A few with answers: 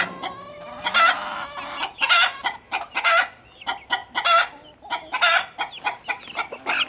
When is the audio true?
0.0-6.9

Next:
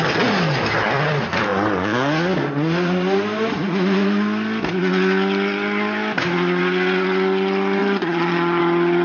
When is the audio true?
0.0-7.8; 8.6-9.0

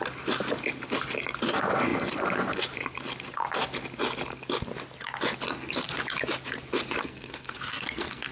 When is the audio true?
0.0-7.0

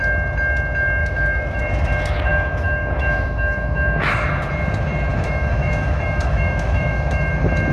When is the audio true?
0.0-1.0; 1.6-2.3; 4.1-5.1; 7.3-7.7

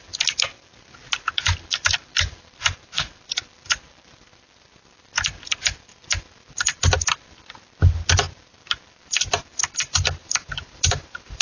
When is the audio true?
0.0-10.2

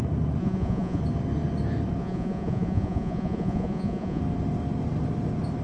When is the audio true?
0.0-0.4; 1.0-2.0; 4.2-5.6

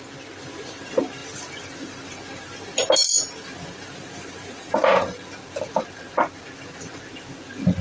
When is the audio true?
0.0-7.8